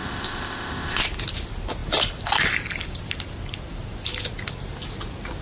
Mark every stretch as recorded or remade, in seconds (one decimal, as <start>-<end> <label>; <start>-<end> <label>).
0.0-1.0 remade; 1.0-5.4 recorded